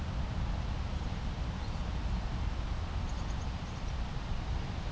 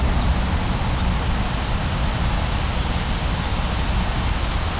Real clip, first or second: second